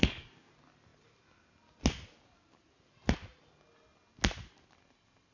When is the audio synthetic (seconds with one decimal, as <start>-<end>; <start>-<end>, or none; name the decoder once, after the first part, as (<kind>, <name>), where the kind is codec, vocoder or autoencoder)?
0.0-0.5 (codec, DAC)